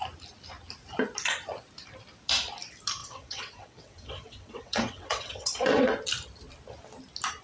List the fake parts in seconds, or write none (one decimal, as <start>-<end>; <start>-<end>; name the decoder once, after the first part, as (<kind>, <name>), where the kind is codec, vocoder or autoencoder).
3.0-5.9 (vocoder, WaveNeXt)